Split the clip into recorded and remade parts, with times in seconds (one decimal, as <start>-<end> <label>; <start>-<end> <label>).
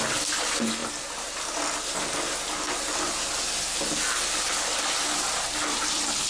0.0-6.3 recorded